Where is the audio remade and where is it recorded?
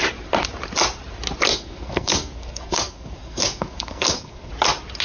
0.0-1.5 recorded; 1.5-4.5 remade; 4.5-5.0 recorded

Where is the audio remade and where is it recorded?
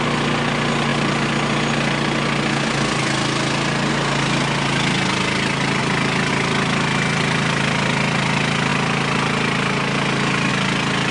0.0-11.1 recorded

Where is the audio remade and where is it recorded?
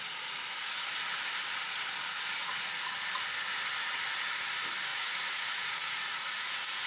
0.0-2.4 recorded; 2.4-3.1 remade; 3.1-4.9 recorded; 4.9-6.9 remade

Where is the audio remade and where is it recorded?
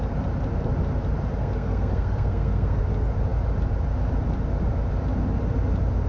0.0-1.4 recorded; 1.4-2.8 remade; 2.8-6.1 recorded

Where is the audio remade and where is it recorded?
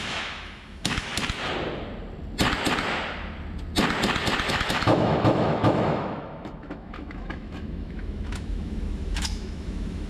0.0-1.1 remade; 1.1-4.5 recorded; 4.5-10.1 remade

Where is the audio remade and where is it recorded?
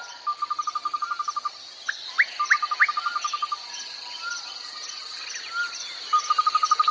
0.0-6.9 recorded